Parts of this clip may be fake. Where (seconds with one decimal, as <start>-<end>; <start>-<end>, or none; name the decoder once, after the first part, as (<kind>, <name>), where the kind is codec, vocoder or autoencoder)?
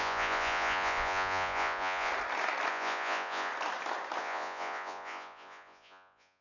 0.0-2.1 (vocoder, Vocos); 2.7-3.5; 4.2-6.4